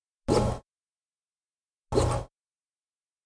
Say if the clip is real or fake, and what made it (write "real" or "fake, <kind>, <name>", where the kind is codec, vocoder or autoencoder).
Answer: real